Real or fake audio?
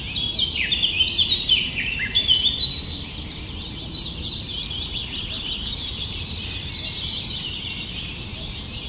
fake